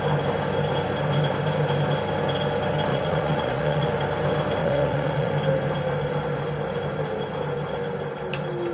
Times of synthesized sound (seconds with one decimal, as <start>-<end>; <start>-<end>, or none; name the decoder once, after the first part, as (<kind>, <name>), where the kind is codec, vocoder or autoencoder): 2.9-3.9 (vocoder, Vocos); 4.6-5.3